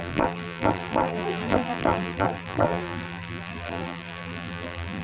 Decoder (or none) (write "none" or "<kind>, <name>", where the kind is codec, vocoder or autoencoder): vocoder, BigVGAN v2